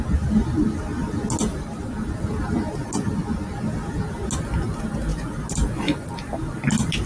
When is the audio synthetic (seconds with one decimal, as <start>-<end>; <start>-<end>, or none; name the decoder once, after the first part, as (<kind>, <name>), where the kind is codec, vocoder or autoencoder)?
none